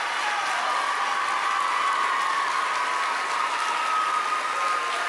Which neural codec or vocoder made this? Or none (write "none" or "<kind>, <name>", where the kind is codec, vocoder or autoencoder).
none